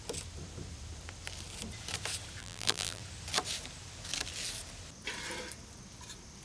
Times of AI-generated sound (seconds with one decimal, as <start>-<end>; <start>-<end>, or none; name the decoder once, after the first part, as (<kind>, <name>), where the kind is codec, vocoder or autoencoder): 2.4-3.0 (vocoder, BigVGAN v2)